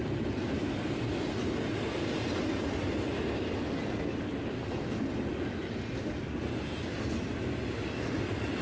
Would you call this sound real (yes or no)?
yes